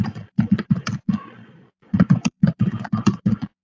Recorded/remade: remade